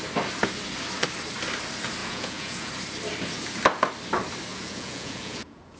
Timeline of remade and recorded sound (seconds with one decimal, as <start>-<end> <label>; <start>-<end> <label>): 0.0-2.0 recorded; 2.0-2.7 remade; 2.7-4.5 recorded; 4.5-5.8 remade